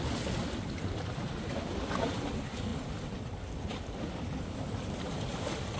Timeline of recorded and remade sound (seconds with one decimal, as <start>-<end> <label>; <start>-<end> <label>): 0.0-5.8 recorded